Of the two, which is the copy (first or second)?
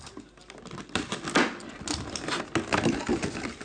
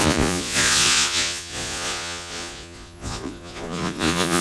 second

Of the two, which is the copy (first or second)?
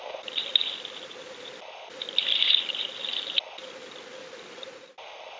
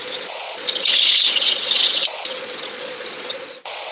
second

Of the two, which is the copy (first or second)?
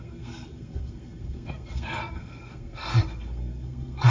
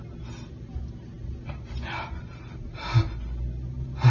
first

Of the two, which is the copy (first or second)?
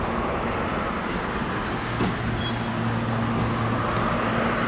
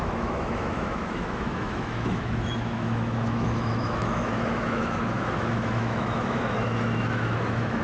second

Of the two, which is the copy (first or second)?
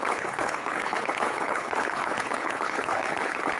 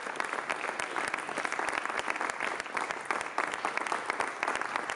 first